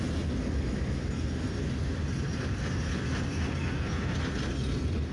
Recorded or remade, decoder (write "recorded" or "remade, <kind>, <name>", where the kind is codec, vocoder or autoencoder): recorded